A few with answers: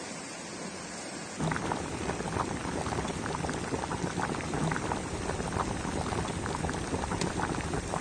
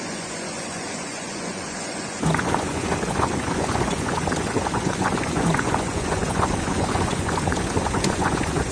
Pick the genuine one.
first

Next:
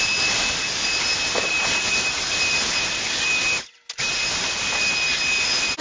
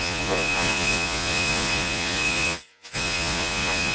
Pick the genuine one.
first